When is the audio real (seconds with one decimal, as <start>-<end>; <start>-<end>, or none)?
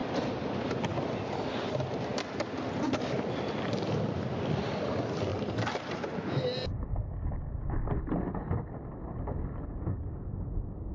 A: 0.0-5.3; 6.9-10.9